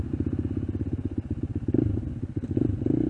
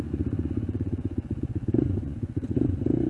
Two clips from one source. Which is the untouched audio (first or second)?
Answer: first